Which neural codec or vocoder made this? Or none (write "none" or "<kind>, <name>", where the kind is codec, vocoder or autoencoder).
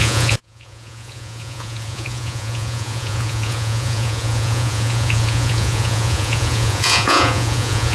vocoder, Vocos